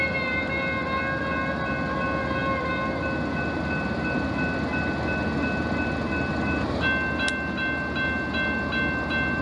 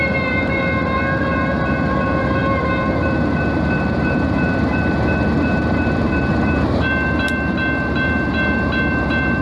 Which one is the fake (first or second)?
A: second